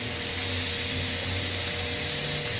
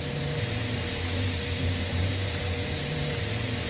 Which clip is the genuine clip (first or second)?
first